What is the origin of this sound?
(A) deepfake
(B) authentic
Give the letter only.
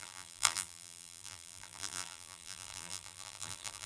A